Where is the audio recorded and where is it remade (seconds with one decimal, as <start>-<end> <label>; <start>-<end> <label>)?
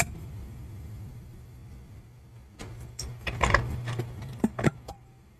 0.0-1.6 remade; 1.6-2.9 recorded; 2.9-5.4 remade